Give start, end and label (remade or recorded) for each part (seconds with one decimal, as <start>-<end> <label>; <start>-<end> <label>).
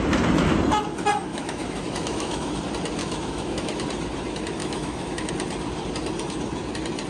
0.0-1.3 recorded; 1.3-2.5 remade; 2.5-3.0 recorded; 3.0-3.8 remade; 3.8-4.6 recorded; 4.6-5.3 remade; 5.3-7.1 recorded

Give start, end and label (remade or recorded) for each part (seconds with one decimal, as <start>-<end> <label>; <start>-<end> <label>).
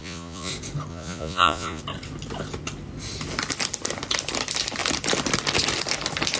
0.0-0.5 remade; 0.5-0.9 recorded; 0.9-1.8 remade; 1.8-6.4 recorded